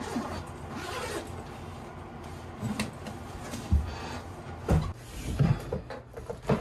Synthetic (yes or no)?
no